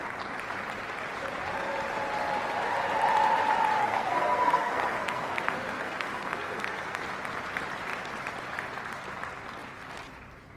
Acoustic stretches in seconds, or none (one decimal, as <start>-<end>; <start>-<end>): 0.0-3.8; 7.0-10.6